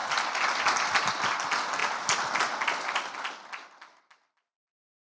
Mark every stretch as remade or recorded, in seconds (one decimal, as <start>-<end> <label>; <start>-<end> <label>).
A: 0.0-5.1 recorded

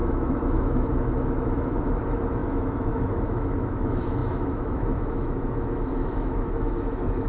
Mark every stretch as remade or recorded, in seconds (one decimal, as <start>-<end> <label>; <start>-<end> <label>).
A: 0.0-7.3 remade

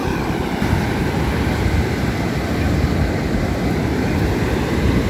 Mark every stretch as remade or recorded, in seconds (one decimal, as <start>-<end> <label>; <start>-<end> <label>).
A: 0.0-5.1 recorded

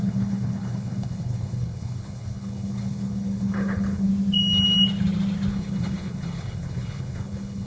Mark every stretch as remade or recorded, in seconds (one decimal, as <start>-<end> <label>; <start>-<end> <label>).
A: 0.0-4.1 remade; 4.1-5.5 recorded; 5.5-7.7 remade